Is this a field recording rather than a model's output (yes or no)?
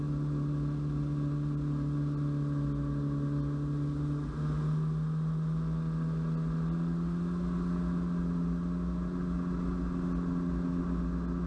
yes